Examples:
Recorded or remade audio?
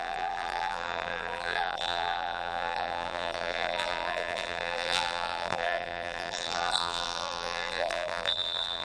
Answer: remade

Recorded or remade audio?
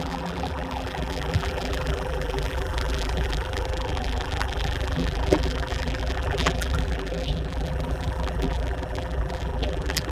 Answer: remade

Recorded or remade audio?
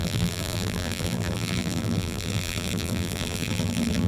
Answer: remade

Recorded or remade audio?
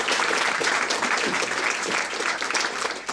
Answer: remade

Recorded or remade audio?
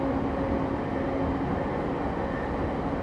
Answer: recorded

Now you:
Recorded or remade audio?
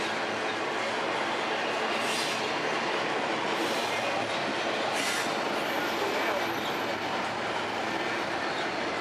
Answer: recorded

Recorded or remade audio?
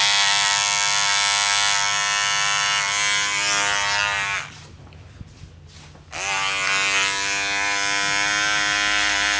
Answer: recorded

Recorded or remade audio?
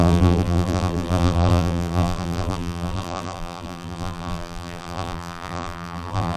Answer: remade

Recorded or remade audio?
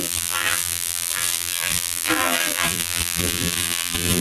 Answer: remade